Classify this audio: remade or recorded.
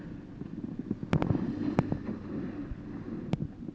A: recorded